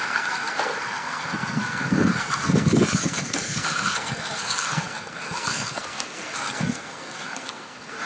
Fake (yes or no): yes